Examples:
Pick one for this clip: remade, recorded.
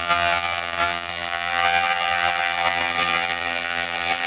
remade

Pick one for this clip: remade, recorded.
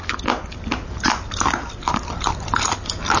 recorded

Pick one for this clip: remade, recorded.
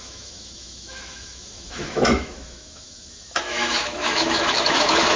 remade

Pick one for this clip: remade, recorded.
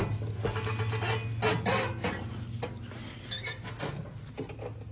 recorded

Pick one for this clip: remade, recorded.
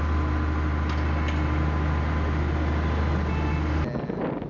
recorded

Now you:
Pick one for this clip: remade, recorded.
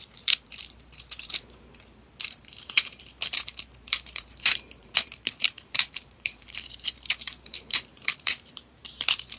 remade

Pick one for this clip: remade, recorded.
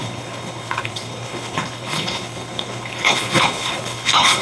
remade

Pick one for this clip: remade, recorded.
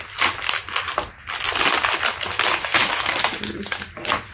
recorded